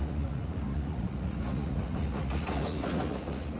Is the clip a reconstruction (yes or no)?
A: yes